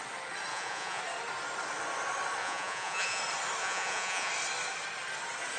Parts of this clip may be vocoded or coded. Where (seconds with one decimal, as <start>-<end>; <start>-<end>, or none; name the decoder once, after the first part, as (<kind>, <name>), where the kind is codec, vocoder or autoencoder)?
0.5-1.0 (vocoder, Vocos); 2.4-3.2; 3.6-4.3